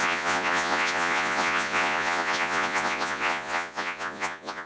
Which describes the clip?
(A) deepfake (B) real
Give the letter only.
A